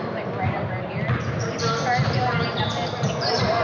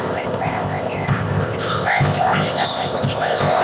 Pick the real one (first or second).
first